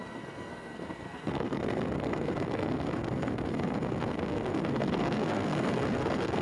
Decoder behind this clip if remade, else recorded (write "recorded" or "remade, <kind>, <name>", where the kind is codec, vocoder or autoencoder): remade, codec, SNAC